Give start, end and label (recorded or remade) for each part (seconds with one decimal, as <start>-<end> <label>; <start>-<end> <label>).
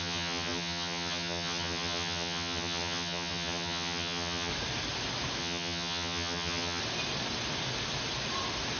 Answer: 0.0-4.5 remade; 4.5-5.4 recorded; 5.4-6.8 remade; 6.8-8.8 recorded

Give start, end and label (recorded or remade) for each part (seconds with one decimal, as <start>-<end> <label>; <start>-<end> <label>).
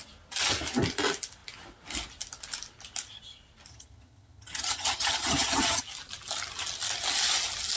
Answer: 0.0-3.7 recorded; 3.7-5.8 remade; 5.8-7.8 recorded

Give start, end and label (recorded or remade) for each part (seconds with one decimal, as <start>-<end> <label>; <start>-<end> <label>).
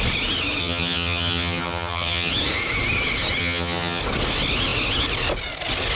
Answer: 0.0-0.6 recorded; 0.6-2.3 remade; 2.3-3.4 recorded; 3.4-4.0 remade; 4.0-5.9 recorded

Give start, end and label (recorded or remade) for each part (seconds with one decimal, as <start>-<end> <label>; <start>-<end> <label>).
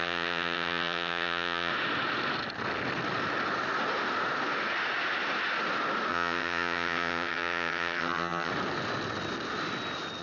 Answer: 0.0-1.7 remade; 1.7-6.1 recorded; 6.1-8.5 remade; 8.5-10.2 recorded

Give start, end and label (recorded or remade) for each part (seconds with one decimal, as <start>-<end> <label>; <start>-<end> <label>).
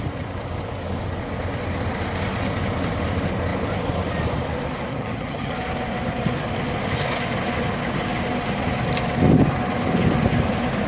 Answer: 0.0-4.9 recorded; 4.9-5.5 remade; 5.5-10.9 recorded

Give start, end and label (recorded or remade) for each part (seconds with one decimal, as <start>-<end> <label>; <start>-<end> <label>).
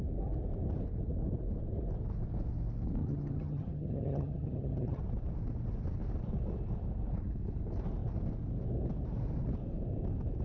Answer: 0.0-3.0 recorded; 3.0-5.0 remade; 5.0-10.4 recorded